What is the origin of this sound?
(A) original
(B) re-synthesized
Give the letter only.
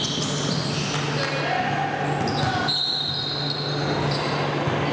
A